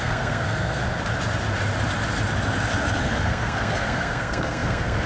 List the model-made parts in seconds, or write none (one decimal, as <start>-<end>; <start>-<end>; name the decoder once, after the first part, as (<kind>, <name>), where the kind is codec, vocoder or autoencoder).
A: 0.0-0.8 (codec, SNAC); 3.0-5.1